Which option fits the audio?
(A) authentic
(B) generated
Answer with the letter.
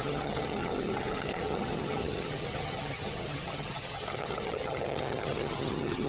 B